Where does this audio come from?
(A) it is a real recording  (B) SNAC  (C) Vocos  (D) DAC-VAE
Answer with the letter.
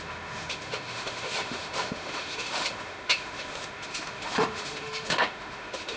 D